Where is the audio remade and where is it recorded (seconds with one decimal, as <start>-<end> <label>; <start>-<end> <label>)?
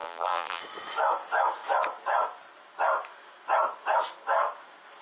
0.0-0.6 remade; 0.6-5.0 recorded